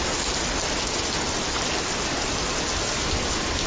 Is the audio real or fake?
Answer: real